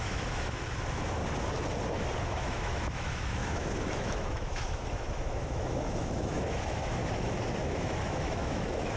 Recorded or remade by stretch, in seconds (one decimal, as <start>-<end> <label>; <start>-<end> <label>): 0.0-1.2 remade; 1.2-2.2 recorded; 2.2-7.0 remade; 7.0-7.6 recorded; 7.6-9.0 remade